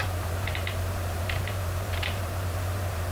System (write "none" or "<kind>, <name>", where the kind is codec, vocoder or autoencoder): vocoder, BigVGAN v2